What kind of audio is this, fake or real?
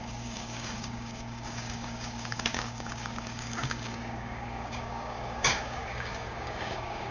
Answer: fake